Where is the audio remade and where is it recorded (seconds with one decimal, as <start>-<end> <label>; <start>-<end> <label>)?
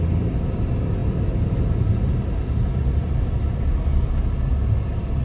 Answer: 0.0-5.2 recorded